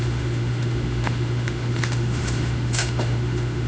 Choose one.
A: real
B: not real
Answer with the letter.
B